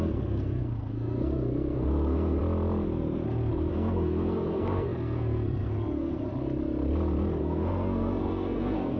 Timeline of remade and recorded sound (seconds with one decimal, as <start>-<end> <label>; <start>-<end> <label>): 0.0-2.4 remade; 2.4-3.7 recorded; 3.7-6.3 remade; 6.3-7.4 recorded; 7.4-9.0 remade